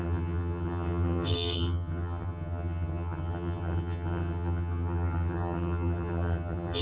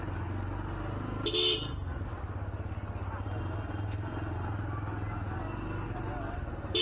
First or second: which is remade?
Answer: first